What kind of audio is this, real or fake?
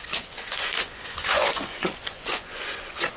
fake